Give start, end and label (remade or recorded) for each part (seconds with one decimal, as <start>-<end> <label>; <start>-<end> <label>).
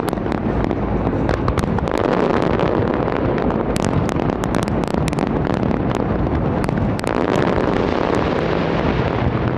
0.0-9.6 recorded